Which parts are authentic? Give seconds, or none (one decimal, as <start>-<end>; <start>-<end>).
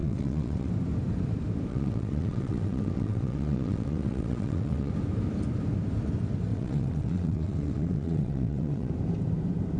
0.7-1.7; 4.9-6.5; 8.9-9.8